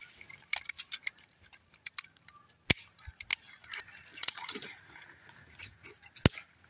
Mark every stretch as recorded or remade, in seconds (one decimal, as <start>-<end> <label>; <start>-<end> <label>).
0.0-4.1 recorded; 4.1-5.9 remade; 5.9-6.7 recorded